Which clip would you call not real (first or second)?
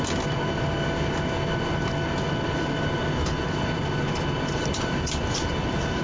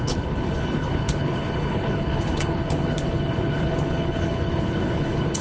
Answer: second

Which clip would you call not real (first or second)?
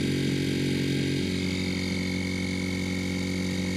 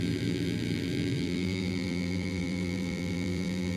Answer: second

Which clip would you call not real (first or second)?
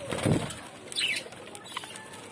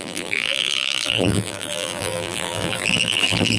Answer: second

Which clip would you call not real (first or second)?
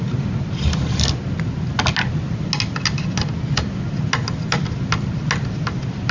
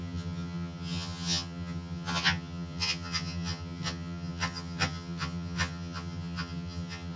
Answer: second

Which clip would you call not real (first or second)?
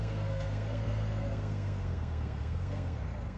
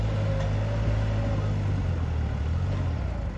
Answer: first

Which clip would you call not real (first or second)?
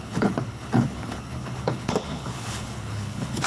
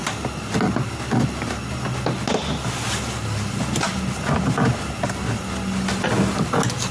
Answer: first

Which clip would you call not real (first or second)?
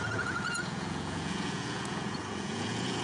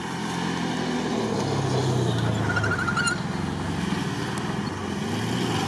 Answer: first